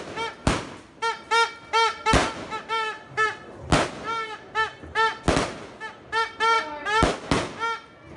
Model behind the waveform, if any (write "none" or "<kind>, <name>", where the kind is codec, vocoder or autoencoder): none